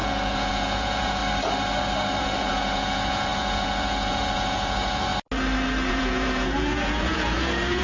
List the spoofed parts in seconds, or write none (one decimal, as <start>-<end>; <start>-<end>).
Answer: 0.0-1.2; 2.2-5.1; 5.9-7.8